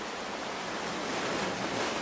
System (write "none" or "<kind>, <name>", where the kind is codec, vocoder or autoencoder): none